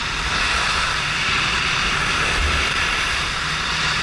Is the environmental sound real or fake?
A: real